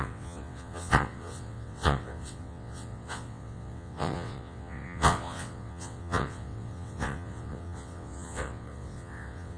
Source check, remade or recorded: remade